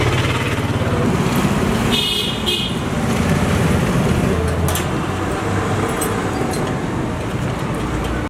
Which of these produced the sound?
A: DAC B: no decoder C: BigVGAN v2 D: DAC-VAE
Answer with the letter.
B